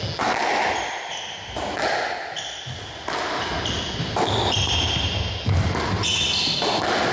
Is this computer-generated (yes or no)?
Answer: no